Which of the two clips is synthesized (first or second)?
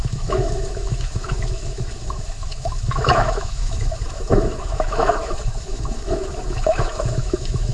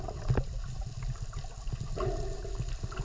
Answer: first